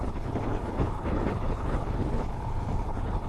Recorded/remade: remade